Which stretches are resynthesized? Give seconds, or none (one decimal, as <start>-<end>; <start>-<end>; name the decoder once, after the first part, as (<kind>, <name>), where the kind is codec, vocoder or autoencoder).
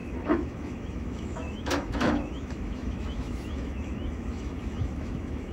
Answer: 0.0-5.5 (autoencoder, DAC-VAE)